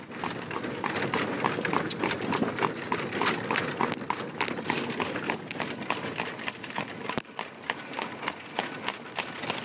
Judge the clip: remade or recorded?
recorded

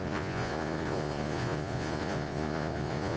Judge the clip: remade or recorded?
remade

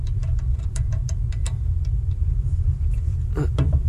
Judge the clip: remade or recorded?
remade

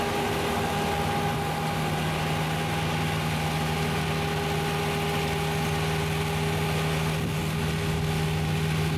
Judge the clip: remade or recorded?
recorded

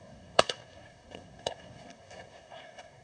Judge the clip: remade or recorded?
remade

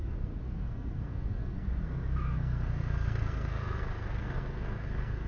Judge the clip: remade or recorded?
remade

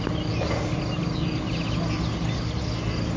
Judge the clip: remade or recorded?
recorded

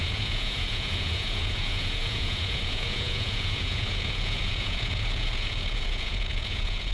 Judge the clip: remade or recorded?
remade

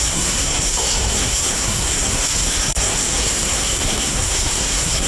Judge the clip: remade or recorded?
remade